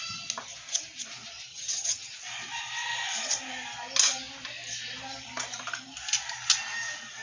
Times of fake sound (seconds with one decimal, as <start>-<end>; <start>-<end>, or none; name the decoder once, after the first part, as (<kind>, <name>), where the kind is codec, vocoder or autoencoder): 1.5-2.1 (vocoder, HiFi-GAN)